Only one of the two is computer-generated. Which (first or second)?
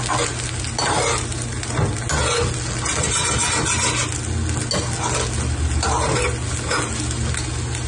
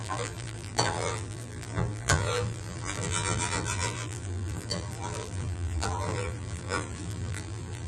second